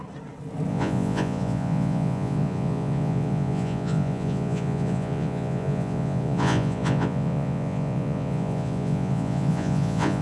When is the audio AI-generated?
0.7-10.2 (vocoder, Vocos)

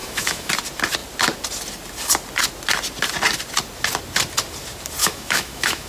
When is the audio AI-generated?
0.0-0.5 (autoencoder, DAC-VAE); 5.0-5.9